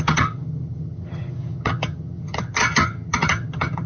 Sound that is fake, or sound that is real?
fake